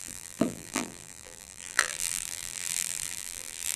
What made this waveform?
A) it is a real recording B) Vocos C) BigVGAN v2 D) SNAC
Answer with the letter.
C